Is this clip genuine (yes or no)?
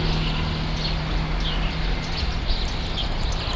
yes